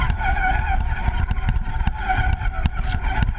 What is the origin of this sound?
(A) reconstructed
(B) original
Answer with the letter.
B